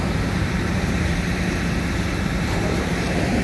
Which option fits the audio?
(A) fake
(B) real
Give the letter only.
A